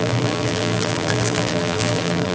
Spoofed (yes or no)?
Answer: yes